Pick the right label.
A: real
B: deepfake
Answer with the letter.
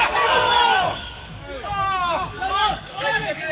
B